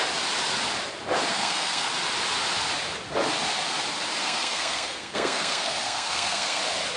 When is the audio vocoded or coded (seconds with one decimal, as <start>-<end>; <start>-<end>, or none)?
1.3-1.9; 4.2-6.6